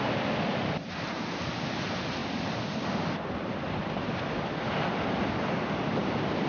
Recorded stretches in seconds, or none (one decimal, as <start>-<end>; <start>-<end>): 0.0-6.5